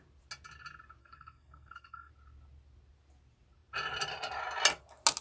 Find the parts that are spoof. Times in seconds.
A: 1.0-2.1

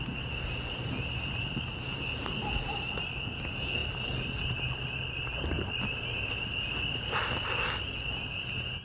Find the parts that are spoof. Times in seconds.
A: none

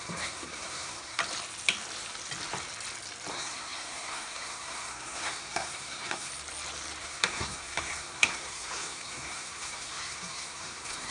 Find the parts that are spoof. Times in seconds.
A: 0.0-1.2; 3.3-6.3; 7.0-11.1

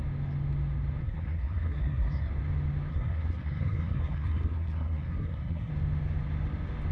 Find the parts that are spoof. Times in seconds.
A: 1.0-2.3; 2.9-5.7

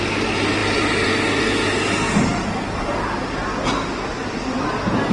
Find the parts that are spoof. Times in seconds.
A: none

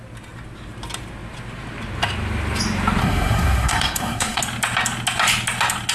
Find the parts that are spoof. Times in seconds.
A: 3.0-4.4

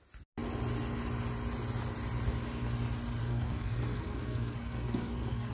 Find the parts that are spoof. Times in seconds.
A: 3.2-5.5

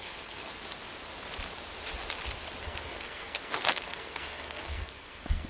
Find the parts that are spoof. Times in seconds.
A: 0.0-0.5; 2.6-5.5